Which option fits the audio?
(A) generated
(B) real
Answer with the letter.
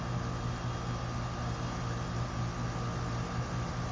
B